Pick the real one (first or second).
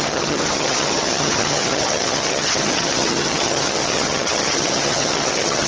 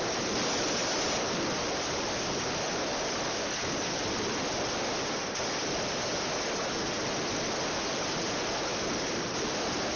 second